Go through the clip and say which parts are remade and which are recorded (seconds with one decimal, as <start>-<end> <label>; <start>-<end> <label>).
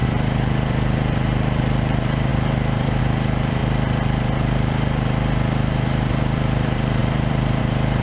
0.0-8.0 remade